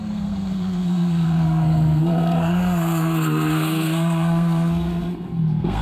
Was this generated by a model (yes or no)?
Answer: yes